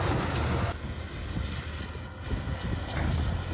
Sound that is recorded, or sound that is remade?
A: recorded